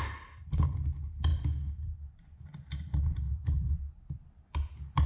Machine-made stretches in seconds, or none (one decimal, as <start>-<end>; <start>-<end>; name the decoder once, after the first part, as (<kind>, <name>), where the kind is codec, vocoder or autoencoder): none